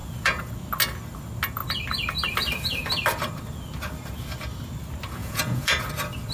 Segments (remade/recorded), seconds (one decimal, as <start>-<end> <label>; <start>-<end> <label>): 0.0-0.5 remade; 0.5-5.2 recorded; 5.2-5.8 remade; 5.8-6.3 recorded